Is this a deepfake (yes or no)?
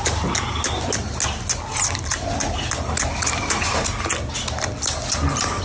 no